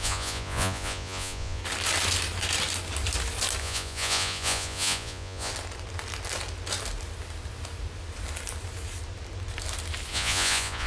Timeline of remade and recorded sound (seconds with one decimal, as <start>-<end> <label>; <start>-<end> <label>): 0.0-1.6 remade; 1.6-3.6 recorded; 3.6-5.5 remade; 5.5-10.1 recorded; 10.1-10.9 remade